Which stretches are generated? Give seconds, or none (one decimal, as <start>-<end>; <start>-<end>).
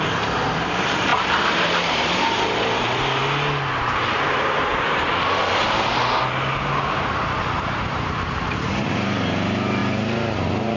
0.0-3.2; 3.8-4.7; 7.6-10.8